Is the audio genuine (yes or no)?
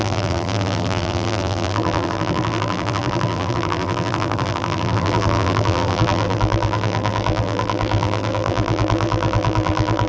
no